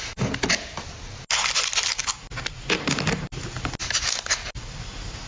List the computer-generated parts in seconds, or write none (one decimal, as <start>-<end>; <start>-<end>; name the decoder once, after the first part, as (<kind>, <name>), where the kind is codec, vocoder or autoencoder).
none